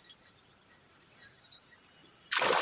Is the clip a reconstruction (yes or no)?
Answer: no